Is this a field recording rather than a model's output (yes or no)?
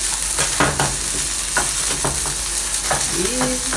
yes